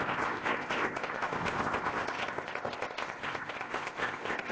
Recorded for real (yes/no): no